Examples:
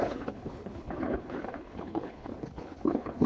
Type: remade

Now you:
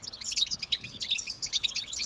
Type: remade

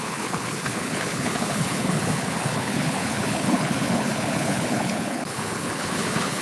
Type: remade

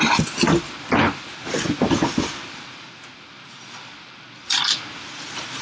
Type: recorded